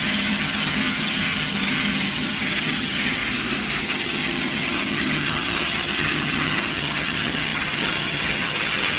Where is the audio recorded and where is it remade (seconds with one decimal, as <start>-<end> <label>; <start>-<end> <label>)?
0.0-3.2 remade; 3.2-3.8 recorded; 3.8-9.0 remade